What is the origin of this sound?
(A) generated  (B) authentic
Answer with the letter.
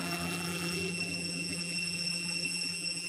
A